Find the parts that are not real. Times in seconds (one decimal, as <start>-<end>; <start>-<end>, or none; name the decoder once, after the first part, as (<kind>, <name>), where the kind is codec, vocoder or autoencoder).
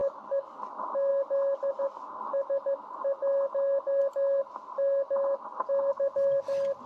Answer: 0.0-0.6 (codec, DAC)